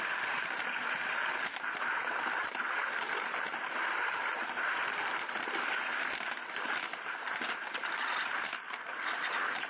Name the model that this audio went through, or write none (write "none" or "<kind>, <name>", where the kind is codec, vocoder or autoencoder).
vocoder, BigVGAN v2